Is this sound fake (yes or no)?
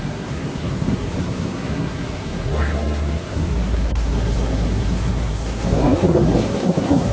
yes